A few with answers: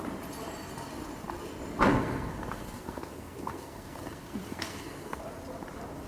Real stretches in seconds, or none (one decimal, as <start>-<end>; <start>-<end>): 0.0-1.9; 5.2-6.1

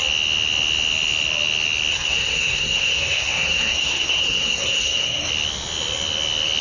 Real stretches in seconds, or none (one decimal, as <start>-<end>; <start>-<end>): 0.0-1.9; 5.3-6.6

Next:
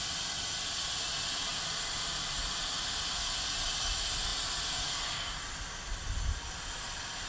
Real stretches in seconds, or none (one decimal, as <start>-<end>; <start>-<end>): 0.0-7.3

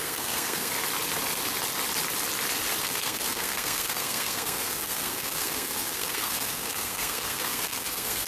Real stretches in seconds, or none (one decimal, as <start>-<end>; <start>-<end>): 0.7-2.8

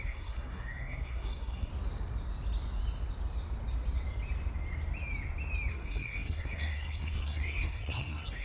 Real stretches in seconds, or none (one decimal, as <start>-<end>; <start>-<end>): 1.7-5.7